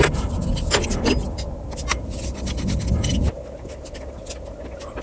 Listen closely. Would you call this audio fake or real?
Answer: real